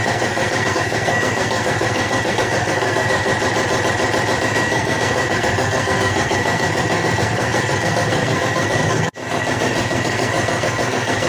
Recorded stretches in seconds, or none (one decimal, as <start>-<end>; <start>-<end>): 3.3-4.4